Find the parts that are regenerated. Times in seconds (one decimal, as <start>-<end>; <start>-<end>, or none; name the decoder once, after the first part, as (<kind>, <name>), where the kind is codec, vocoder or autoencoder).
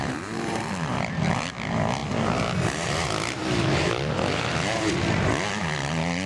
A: 0.0-0.6 (vocoder, BigVGAN v2)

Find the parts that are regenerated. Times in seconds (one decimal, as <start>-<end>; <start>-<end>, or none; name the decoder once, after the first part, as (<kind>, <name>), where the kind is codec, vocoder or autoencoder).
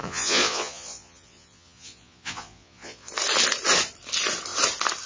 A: 0.0-3.1 (vocoder, Vocos)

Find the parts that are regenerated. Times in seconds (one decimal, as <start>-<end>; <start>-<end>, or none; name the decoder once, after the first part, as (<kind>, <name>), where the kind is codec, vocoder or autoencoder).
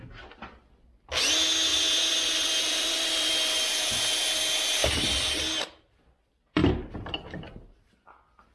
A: 1.7-3.3 (vocoder, BigVGAN v2); 4.8-5.4; 6.6-7.2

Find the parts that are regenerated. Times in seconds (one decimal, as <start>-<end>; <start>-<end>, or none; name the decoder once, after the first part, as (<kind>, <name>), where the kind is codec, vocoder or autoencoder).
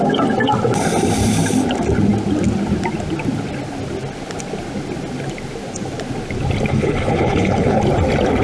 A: 6.7-7.8 (codec, HILCodec)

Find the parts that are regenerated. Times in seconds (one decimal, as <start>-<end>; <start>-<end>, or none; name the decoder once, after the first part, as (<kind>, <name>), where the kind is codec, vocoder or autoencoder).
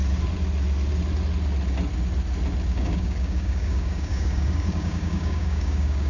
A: 2.7-6.1 (codec, DAC)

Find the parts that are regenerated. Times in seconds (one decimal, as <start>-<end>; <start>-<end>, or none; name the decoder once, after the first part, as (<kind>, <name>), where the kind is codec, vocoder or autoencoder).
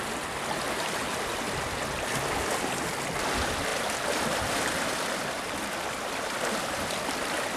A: 3.7-6.9 (vocoder, BigVGAN v2)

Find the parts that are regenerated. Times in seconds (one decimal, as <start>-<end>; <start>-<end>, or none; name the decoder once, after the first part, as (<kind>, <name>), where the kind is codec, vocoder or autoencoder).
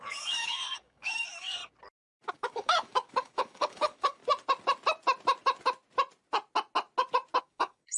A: 0.0-1.6 (codec, DAC); 2.3-4.2; 7.4-8.0